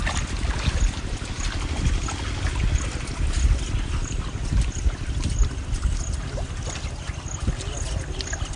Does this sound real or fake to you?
real